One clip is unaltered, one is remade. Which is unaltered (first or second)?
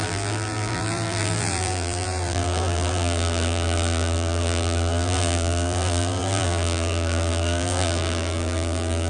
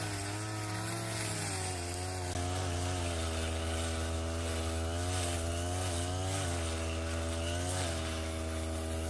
second